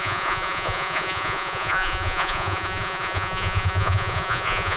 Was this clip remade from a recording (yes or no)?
yes